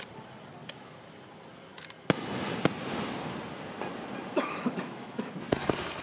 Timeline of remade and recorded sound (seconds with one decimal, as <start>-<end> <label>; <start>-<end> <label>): 0.0-4.3 recorded; 4.3-5.3 remade; 5.3-6.0 recorded